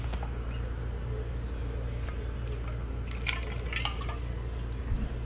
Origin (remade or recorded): recorded